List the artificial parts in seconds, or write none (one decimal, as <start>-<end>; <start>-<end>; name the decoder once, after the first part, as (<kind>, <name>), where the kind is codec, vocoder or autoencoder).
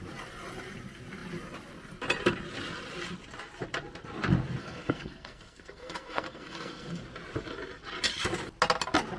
4.6-7.0 (codec, SNAC)